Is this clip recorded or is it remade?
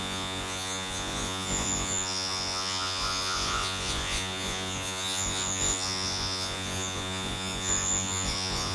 remade